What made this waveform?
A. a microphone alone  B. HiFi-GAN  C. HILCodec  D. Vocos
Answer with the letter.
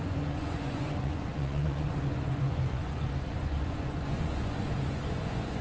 D